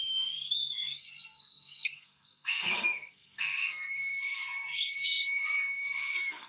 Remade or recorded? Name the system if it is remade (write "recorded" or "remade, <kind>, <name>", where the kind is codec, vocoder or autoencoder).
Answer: remade, codec, SNAC